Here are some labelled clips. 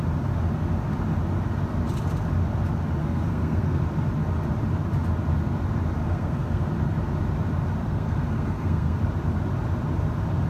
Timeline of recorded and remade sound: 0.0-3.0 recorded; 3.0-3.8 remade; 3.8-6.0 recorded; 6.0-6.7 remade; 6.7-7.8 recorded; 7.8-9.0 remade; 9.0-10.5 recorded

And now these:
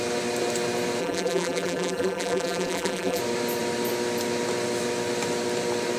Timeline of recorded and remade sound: 0.0-1.0 recorded; 1.0-3.2 remade; 3.2-6.0 recorded

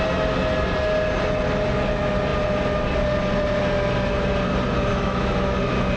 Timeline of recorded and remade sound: 0.0-4.9 recorded; 4.9-5.6 remade; 5.6-6.0 recorded

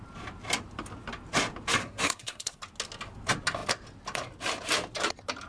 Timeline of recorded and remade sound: 0.0-1.8 recorded; 1.8-2.6 remade; 2.6-5.5 recorded

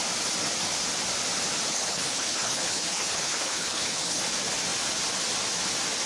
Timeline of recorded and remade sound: 0.0-1.7 recorded; 1.7-4.2 remade; 4.2-6.1 recorded

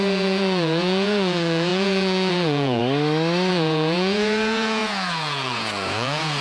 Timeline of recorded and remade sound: 0.0-2.8 remade; 2.8-3.5 recorded; 3.5-6.4 remade

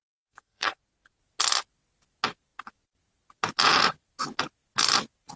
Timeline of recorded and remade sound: 0.0-0.8 remade; 0.8-5.4 recorded